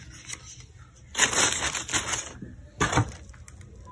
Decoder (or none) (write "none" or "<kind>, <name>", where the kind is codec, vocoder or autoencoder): none